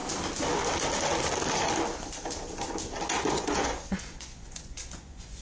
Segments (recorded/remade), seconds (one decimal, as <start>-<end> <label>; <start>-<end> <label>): 0.0-3.2 recorded; 3.2-5.4 remade